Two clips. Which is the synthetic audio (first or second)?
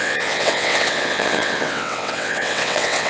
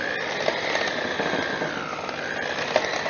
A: first